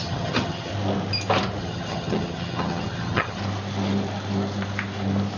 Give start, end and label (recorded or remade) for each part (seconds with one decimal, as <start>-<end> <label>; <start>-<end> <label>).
0.0-0.7 remade; 0.7-1.6 recorded; 1.6-3.4 remade; 3.4-5.4 recorded